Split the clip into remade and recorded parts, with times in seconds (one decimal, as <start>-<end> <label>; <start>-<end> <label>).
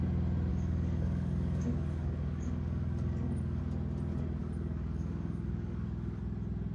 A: 0.0-0.5 recorded; 0.5-3.6 remade; 3.6-4.4 recorded; 4.4-6.2 remade; 6.2-6.7 recorded